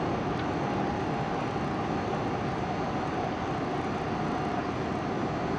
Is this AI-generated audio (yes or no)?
no